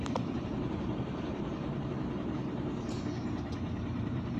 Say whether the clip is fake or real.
fake